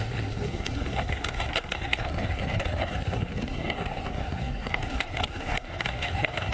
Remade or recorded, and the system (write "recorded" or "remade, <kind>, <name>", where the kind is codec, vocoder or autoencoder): remade, codec, SNAC